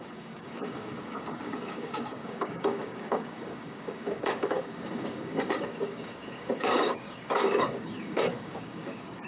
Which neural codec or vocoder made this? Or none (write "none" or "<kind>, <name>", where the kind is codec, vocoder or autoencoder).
codec, DAC